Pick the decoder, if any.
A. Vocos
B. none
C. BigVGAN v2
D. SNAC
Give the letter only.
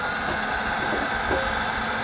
B